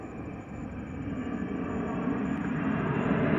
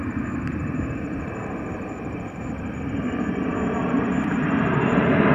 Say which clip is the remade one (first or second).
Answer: second